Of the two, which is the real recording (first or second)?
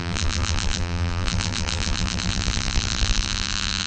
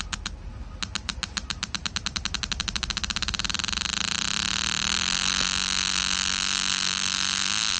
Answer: second